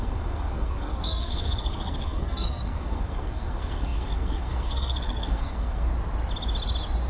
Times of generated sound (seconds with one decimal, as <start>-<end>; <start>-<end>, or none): 0.0-5.9